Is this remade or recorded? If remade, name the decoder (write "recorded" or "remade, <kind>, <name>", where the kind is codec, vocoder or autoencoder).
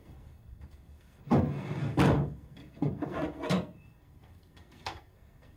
remade, codec, SNAC